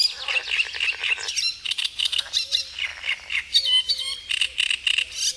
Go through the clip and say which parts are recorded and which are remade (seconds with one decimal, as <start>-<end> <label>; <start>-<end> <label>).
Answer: 0.0-5.4 recorded